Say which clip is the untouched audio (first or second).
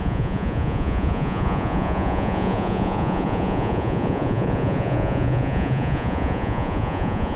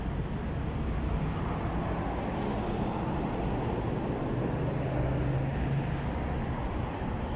second